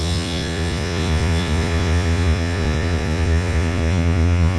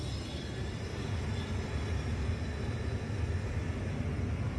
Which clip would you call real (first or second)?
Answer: second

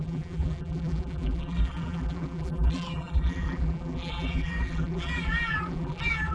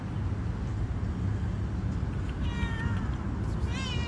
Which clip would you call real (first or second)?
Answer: second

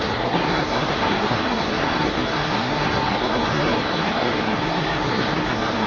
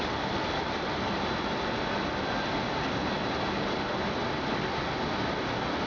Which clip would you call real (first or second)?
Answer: second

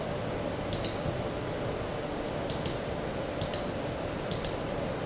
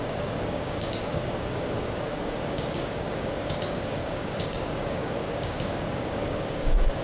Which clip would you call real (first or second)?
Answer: first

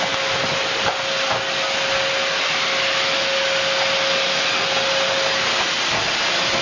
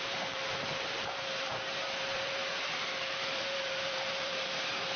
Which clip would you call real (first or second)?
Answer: first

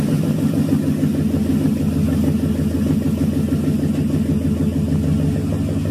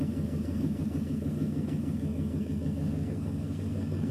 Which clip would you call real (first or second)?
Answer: first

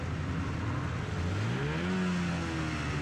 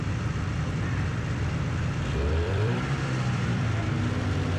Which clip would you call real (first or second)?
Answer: first